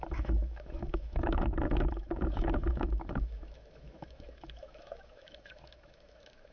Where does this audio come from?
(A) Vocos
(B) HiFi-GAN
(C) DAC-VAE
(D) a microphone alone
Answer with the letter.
C